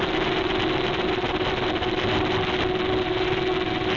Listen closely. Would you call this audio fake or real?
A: real